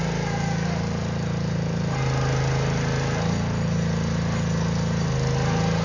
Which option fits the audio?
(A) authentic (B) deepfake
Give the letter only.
A